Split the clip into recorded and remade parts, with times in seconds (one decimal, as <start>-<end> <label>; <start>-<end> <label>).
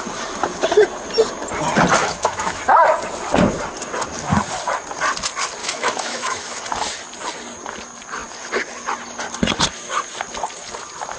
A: 0.0-2.0 recorded; 2.0-2.6 remade; 2.6-5.6 recorded; 5.6-6.6 remade; 6.6-11.2 recorded